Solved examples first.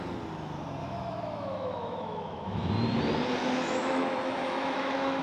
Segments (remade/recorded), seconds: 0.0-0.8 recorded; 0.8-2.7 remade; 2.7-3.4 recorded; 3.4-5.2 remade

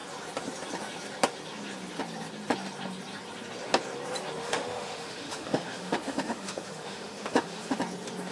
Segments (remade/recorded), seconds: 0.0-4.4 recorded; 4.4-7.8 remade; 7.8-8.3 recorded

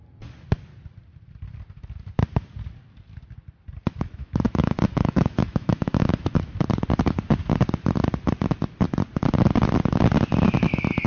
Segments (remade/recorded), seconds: 0.0-3.9 recorded; 3.9-6.4 remade; 6.4-11.1 recorded

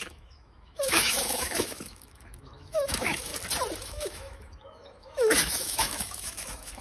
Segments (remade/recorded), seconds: 0.0-3.3 remade; 3.3-3.8 recorded; 3.8-6.8 remade

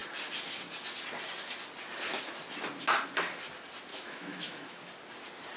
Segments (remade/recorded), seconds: 0.0-3.9 recorded; 3.9-4.9 remade; 4.9-5.6 recorded

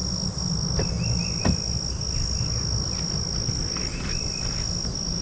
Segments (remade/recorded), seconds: 0.0-5.2 recorded